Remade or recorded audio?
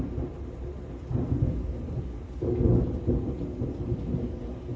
recorded